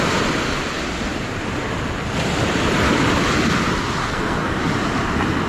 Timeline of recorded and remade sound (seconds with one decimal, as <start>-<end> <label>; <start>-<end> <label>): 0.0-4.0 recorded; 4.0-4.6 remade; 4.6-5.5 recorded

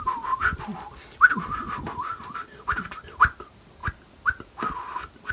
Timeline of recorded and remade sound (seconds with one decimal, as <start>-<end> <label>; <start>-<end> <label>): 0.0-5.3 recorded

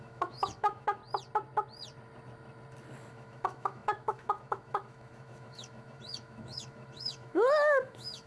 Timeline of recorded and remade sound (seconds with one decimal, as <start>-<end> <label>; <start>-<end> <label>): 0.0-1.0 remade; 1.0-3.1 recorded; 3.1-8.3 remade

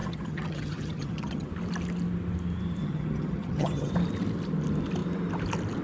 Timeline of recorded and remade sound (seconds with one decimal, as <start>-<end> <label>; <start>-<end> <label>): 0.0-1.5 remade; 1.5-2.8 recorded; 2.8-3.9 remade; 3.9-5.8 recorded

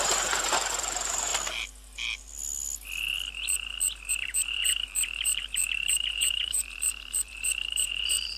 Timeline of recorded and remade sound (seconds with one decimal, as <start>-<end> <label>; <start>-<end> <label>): 0.0-1.3 remade; 1.3-4.1 recorded; 4.1-8.4 remade

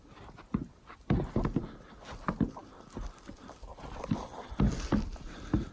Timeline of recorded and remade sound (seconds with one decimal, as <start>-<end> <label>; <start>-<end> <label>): 0.0-5.7 recorded

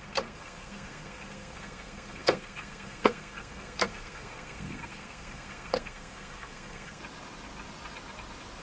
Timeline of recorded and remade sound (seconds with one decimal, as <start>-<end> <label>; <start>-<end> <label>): 0.0-7.0 remade; 7.0-8.6 recorded

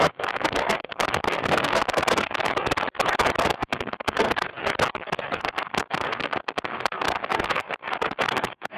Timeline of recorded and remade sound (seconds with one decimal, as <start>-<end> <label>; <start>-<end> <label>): 0.0-2.5 remade; 2.5-3.4 recorded; 3.4-4.5 remade; 4.5-5.4 recorded; 5.4-8.8 remade